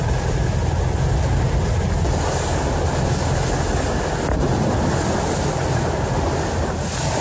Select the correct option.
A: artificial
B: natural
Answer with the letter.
B